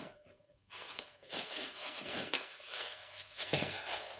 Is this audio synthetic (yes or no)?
yes